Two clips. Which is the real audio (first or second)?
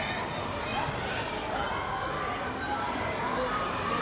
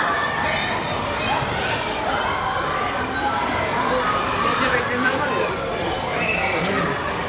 first